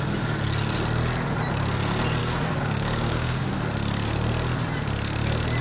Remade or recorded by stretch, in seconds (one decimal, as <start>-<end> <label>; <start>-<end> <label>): 0.0-2.2 recorded; 2.2-3.5 remade; 3.5-5.6 recorded